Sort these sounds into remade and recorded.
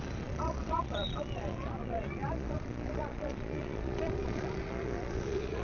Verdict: remade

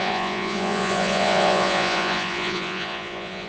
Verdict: remade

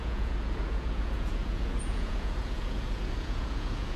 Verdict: remade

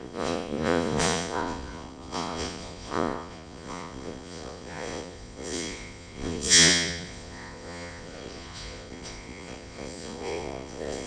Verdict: remade